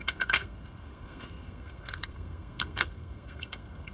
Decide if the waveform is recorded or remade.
remade